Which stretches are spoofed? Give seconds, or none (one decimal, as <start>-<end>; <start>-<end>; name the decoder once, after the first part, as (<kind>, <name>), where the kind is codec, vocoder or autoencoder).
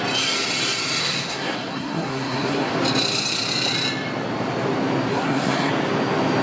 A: 1.0-2.7 (codec, SNAC); 5.1-5.7